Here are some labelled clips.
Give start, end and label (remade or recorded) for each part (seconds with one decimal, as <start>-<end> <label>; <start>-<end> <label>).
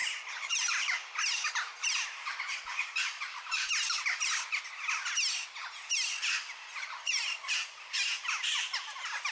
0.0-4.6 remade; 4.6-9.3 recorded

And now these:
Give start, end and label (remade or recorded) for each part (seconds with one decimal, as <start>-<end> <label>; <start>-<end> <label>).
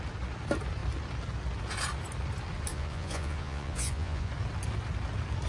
0.0-2.7 recorded; 2.7-4.3 remade; 4.3-5.5 recorded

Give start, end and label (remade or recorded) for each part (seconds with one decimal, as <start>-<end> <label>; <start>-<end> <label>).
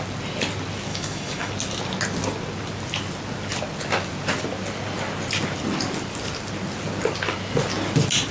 0.0-0.9 recorded; 0.9-1.5 remade; 1.5-8.3 recorded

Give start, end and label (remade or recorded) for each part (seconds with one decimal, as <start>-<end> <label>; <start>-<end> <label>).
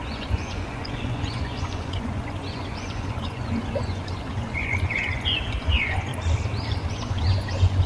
0.0-6.1 remade; 6.1-6.9 recorded; 6.9-7.9 remade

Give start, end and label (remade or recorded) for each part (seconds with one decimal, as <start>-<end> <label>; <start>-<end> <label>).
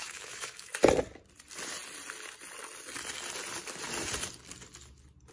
0.0-0.7 remade; 0.7-5.3 recorded